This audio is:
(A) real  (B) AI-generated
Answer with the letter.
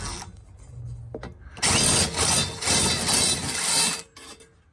A